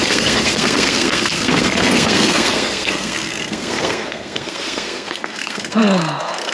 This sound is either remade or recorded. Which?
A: remade